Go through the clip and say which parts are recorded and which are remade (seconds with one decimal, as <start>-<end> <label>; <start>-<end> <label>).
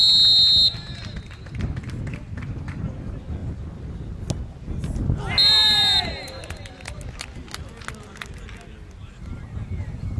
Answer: 0.0-9.0 recorded; 9.0-10.2 remade